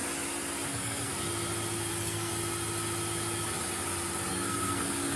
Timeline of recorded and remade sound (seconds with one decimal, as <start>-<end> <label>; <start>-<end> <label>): 0.0-0.7 recorded; 0.7-1.1 remade; 1.1-1.9 recorded; 1.9-2.3 remade; 2.3-4.3 recorded; 4.3-5.2 remade